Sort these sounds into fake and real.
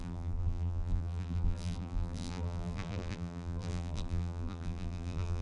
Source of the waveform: fake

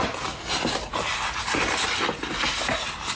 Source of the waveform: real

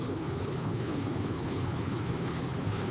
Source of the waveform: fake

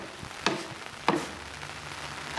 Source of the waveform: real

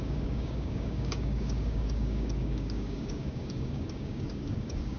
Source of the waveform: fake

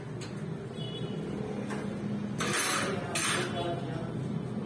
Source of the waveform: real